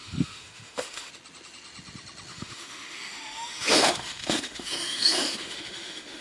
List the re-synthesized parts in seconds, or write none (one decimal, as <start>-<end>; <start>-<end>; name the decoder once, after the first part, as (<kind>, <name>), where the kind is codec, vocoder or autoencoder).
0.0-1.1 (autoencoder, DAC-VAE); 2.3-6.2